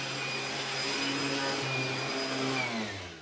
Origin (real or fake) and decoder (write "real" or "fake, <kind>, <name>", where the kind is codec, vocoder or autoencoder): real